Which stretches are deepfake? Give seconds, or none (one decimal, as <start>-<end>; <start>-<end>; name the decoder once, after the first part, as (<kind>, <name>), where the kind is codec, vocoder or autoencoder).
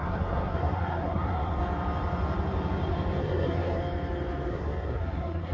0.0-1.6 (codec, SNAC); 3.2-3.8; 4.5-5.5